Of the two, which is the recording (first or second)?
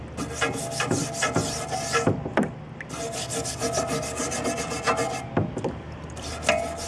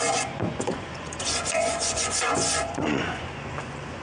first